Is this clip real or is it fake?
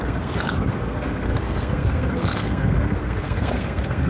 fake